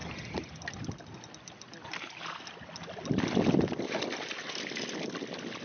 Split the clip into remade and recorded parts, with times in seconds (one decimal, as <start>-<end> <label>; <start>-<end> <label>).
0.0-3.4 remade; 3.4-5.6 recorded